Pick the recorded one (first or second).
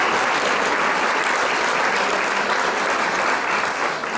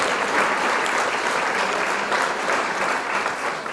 first